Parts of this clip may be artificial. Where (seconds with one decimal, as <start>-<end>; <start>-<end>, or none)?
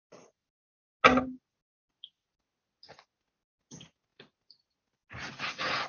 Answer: none